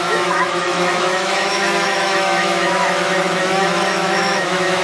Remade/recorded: remade